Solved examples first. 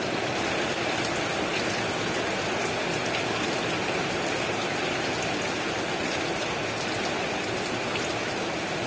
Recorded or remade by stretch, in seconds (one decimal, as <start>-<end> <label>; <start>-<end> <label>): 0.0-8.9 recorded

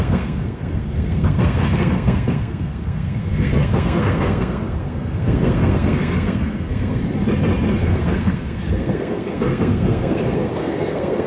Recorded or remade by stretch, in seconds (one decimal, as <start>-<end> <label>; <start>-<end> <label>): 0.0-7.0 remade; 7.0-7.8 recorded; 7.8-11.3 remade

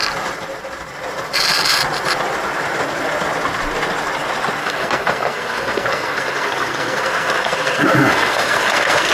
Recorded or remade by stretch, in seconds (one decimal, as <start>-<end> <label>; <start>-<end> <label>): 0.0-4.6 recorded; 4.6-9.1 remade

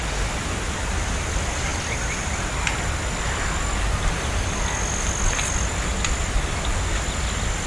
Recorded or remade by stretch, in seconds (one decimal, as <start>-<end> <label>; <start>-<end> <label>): 0.0-7.7 recorded